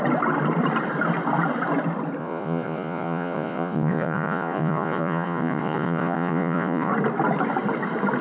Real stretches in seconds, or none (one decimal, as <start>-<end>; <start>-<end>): 0.0-2.2; 6.9-8.2